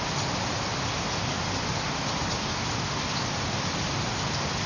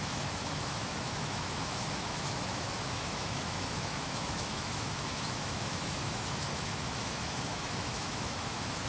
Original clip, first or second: first